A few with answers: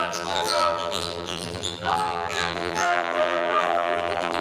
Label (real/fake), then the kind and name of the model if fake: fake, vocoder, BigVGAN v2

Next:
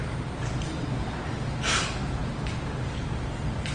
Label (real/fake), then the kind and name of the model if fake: fake, vocoder, BigVGAN v2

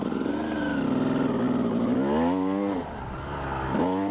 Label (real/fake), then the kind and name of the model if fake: real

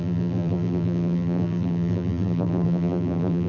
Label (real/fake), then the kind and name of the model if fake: fake, vocoder, BigVGAN v2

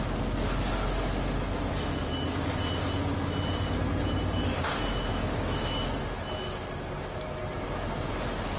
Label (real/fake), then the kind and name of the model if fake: real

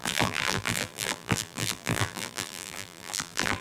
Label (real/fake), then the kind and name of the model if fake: fake, vocoder, BigVGAN v2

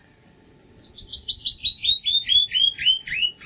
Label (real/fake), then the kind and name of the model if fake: real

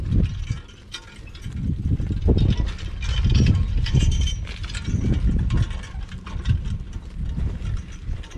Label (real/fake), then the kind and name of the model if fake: real